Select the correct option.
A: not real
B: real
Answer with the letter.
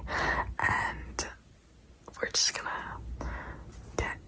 B